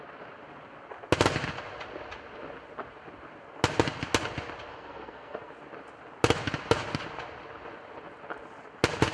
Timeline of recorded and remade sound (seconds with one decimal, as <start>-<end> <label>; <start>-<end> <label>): 0.0-4.7 recorded; 4.7-5.5 remade; 5.5-9.1 recorded